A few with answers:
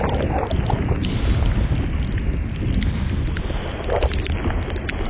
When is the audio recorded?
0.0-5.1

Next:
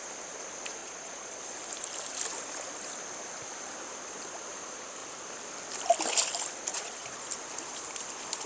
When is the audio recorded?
0.0-0.8; 1.4-6.7; 7.3-8.5

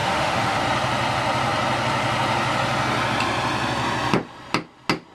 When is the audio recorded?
0.6-5.1

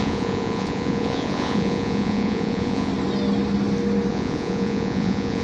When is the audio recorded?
2.9-4.1

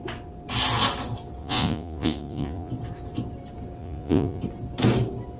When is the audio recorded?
0.0-1.4; 2.7-3.8; 4.4-5.4